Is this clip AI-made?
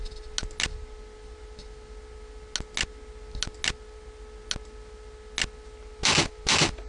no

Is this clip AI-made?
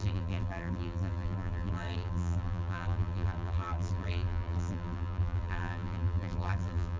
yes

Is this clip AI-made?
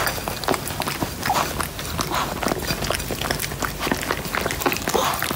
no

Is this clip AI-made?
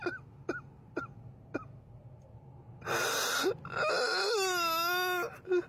no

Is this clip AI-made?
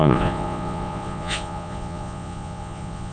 yes